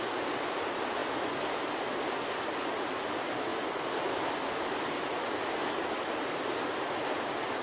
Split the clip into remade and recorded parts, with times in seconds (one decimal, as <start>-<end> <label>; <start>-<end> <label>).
0.0-7.6 recorded